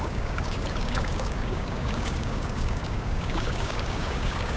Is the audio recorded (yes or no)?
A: no